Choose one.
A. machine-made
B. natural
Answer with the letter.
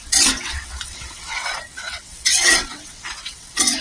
A